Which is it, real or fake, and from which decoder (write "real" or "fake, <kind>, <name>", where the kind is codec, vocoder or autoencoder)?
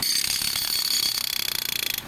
real